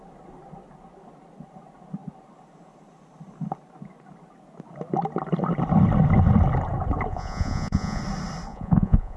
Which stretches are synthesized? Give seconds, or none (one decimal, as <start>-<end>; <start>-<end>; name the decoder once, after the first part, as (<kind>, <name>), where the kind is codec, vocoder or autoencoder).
7.1-8.0 (vocoder, Vocos); 8.5-9.2